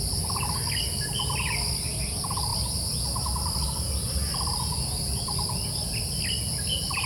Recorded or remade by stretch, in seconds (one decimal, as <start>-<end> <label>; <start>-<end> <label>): 0.0-7.1 recorded